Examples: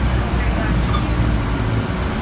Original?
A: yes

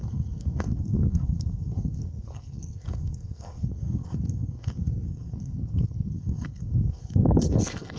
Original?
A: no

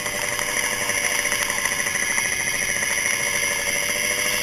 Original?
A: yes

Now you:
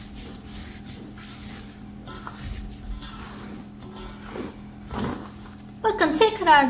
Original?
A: yes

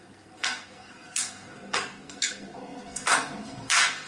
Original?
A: no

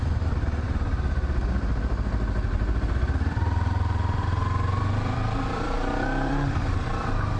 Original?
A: no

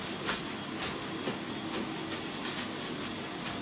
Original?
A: yes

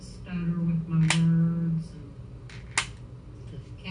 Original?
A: yes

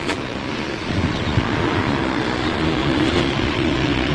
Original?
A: no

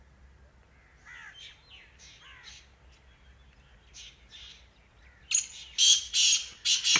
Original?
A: yes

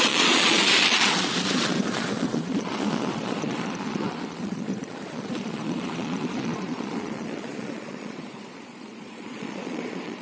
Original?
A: no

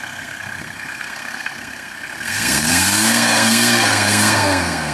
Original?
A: no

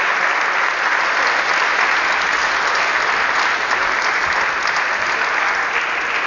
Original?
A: yes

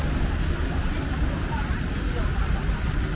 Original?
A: yes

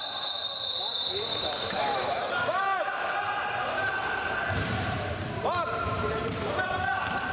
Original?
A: no